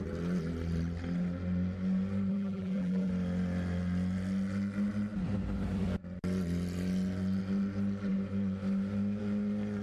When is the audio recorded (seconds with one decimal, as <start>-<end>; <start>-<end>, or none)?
0.0-2.3; 3.1-9.8